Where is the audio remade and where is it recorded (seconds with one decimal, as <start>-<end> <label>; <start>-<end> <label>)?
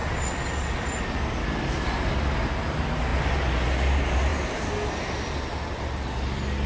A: 0.0-6.7 recorded